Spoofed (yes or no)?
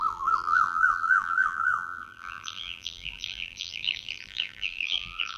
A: yes